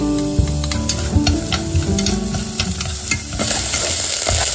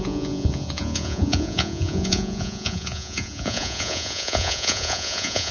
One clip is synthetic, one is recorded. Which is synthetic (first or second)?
second